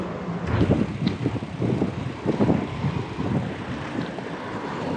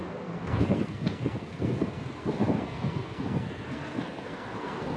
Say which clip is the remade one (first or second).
second